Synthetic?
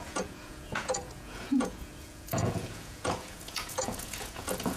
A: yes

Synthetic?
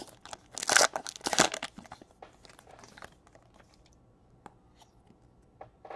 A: no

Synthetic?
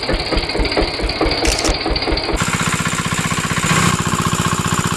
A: no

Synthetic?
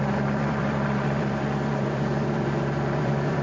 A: yes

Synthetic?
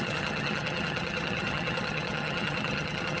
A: yes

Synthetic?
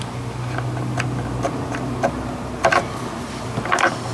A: no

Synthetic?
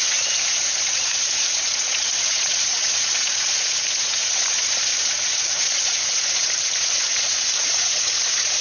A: yes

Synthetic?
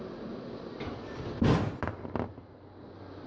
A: no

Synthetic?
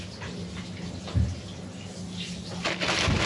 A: no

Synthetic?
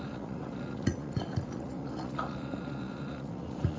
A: yes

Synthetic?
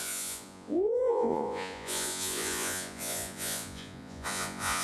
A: yes